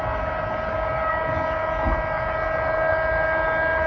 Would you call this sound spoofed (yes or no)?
no